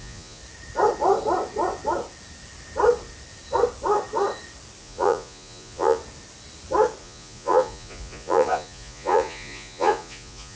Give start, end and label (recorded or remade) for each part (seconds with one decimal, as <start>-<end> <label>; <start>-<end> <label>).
0.0-0.4 remade; 0.4-4.8 recorded; 4.8-6.0 remade; 6.0-7.0 recorded; 7.0-10.6 remade